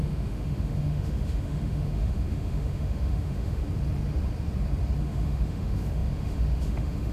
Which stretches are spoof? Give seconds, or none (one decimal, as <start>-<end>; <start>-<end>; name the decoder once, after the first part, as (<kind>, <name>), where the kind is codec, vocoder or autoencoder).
0.0-3.6 (autoencoder, DAC-VAE); 5.0-7.1